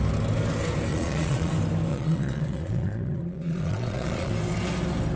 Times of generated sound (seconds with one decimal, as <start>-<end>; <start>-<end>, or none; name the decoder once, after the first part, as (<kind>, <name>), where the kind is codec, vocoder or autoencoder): 0.9-1.5 (vocoder, Vocos); 1.9-4.3